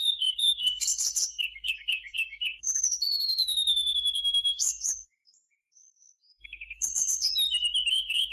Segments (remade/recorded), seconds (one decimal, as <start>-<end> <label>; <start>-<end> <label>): 0.0-7.3 remade; 7.3-7.9 recorded; 7.9-8.3 remade